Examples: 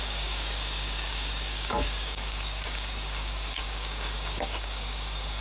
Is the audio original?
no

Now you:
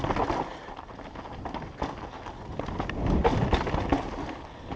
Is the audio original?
yes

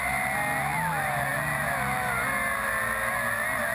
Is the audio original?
yes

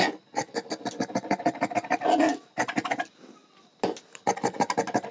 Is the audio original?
yes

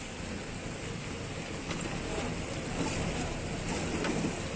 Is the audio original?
yes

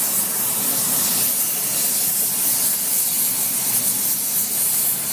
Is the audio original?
yes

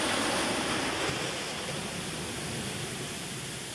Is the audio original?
yes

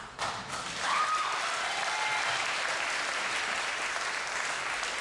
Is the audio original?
yes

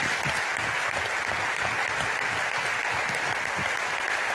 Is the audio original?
yes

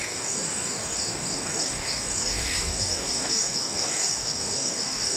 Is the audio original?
no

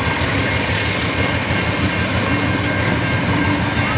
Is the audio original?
yes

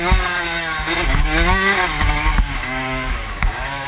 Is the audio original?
no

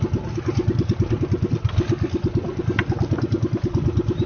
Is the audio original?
yes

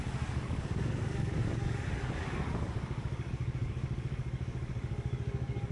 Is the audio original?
no